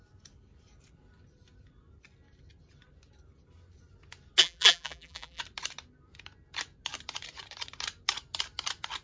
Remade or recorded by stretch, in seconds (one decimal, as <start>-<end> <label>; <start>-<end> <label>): 0.0-4.4 recorded; 4.4-5.4 remade; 5.4-9.0 recorded